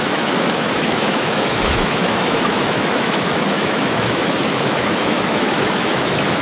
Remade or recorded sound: remade